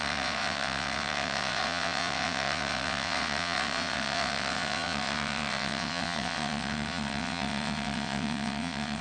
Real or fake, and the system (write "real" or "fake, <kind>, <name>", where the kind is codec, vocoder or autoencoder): fake, vocoder, WaveNeXt